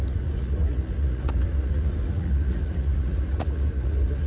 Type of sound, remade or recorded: remade